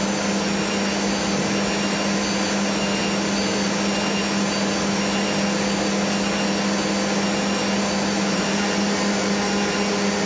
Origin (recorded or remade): recorded